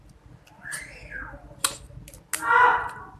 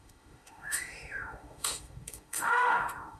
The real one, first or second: first